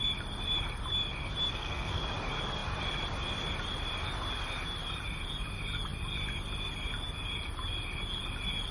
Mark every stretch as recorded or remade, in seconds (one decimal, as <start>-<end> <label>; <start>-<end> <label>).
0.0-1.5 recorded; 1.5-2.0 remade; 2.0-8.7 recorded